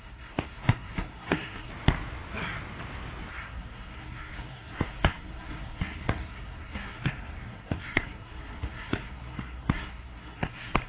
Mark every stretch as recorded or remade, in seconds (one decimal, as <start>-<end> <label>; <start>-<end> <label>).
0.0-1.7 remade; 1.7-3.3 recorded; 3.3-10.9 remade